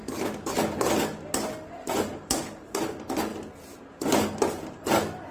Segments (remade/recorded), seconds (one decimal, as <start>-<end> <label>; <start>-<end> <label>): 0.0-1.8 recorded; 1.8-2.8 remade; 2.8-3.3 recorded; 3.3-3.8 remade; 3.8-5.3 recorded